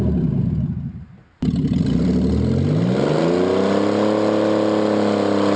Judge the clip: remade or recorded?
recorded